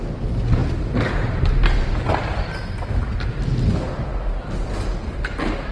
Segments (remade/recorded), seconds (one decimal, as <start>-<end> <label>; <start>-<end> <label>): 0.0-5.7 recorded

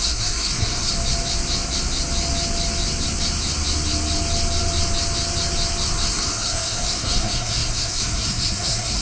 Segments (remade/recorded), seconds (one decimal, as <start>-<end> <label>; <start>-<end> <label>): 0.0-0.9 remade; 0.9-6.1 recorded; 6.1-9.0 remade